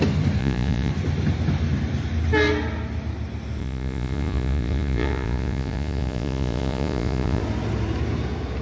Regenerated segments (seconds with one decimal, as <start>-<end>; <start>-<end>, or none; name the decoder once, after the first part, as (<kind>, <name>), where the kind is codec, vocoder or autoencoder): 0.4-0.9 (vocoder, Vocos); 3.6-7.4